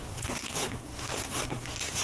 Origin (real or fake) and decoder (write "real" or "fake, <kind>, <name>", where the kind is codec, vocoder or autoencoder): fake, codec, SNAC